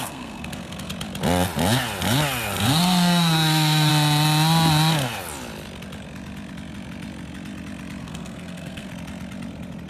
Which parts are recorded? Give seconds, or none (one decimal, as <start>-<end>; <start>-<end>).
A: 0.9-2.6; 3.9-8.0; 8.9-9.9